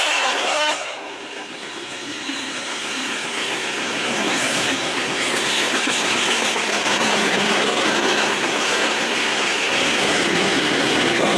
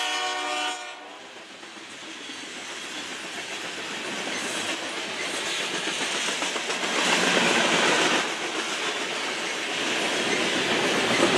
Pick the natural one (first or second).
second